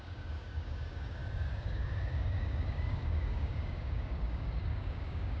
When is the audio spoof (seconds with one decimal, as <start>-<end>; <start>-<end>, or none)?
0.0-5.4